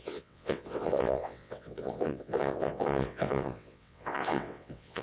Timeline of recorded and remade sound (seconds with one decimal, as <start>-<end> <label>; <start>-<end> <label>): 0.0-5.0 remade